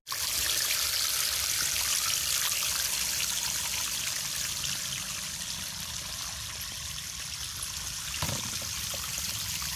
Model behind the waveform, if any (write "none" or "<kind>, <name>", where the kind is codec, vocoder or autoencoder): none